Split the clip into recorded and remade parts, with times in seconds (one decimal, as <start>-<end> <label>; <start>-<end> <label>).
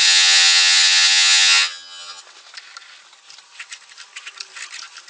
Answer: 0.0-2.2 remade; 2.2-5.1 recorded